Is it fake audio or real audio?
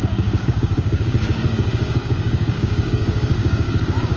fake